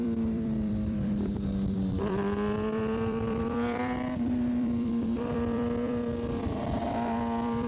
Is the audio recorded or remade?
remade